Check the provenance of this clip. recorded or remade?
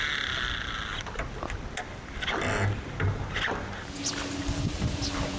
recorded